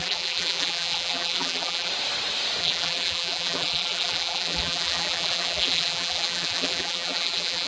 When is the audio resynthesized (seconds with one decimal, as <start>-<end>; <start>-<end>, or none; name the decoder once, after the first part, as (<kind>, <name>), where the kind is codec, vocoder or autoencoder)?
0.0-1.9 (vocoder, BigVGAN v2); 2.6-7.7